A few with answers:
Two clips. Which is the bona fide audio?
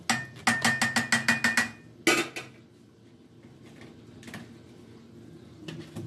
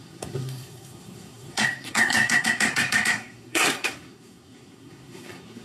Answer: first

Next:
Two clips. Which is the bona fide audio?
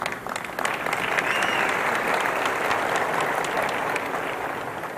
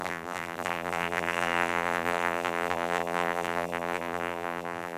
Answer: first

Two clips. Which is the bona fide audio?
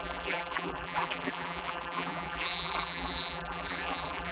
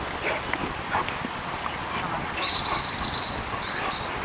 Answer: second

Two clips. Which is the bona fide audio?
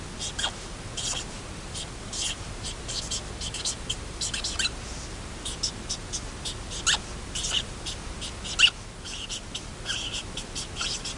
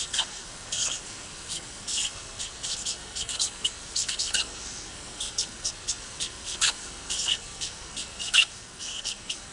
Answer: first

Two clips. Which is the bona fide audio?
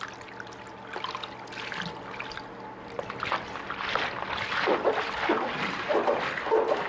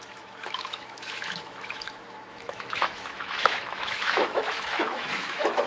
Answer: first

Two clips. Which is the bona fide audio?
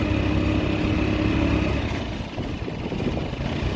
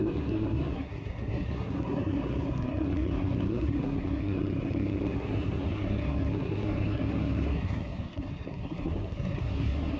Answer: first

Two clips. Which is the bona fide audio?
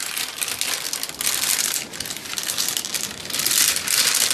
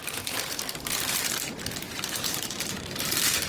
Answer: first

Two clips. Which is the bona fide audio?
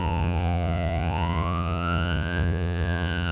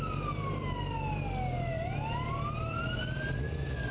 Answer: second